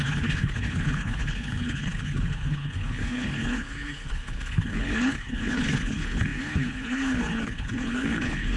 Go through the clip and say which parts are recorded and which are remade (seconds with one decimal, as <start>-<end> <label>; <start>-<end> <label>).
0.0-8.6 remade